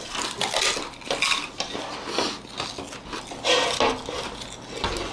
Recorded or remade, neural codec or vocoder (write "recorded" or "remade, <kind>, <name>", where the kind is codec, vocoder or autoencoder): recorded